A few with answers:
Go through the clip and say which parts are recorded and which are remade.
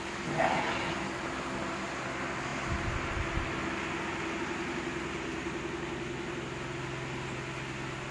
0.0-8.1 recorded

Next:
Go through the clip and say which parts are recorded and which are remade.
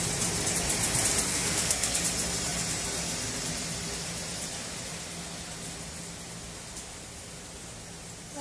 0.0-1.3 recorded; 1.3-2.0 remade; 2.0-8.4 recorded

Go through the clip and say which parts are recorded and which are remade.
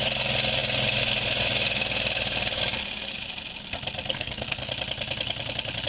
0.0-4.1 recorded; 4.1-4.7 remade; 4.7-5.9 recorded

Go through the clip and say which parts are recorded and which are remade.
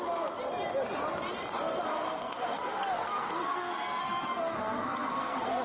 0.0-1.9 recorded; 1.9-5.6 remade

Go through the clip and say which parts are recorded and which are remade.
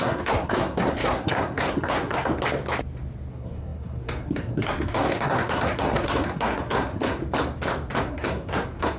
0.0-2.3 remade; 2.3-3.3 recorded; 3.3-7.2 remade; 7.2-8.0 recorded; 8.0-9.0 remade